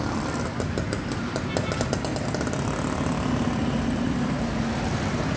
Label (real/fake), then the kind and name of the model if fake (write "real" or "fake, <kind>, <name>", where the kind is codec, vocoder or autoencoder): real